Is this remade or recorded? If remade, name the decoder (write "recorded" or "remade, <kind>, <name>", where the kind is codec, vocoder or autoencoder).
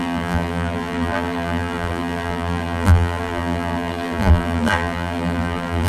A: remade, vocoder, BigVGAN v2